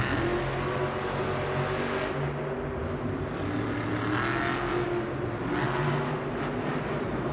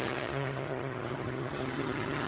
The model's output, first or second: second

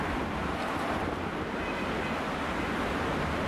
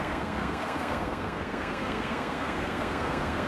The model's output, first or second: second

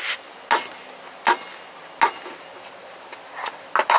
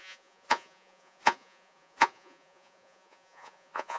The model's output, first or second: second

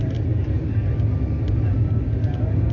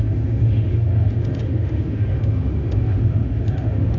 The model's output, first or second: second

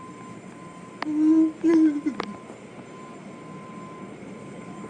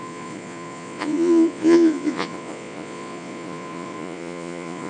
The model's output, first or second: second